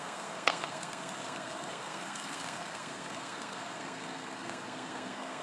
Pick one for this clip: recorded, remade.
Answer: remade